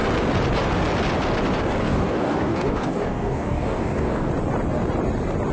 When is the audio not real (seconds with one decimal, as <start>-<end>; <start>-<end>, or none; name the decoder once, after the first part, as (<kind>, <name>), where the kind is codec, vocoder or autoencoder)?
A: 1.8-4.3 (codec, DAC)